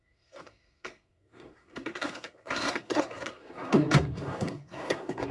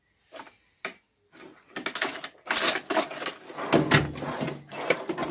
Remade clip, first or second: first